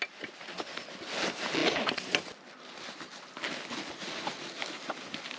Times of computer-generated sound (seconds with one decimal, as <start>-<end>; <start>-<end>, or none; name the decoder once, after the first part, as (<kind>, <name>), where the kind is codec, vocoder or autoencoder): none